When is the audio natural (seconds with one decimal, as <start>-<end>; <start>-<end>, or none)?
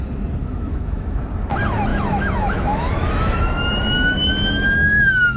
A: 0.0-0.4; 1.2-1.9